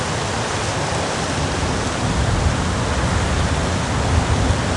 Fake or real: real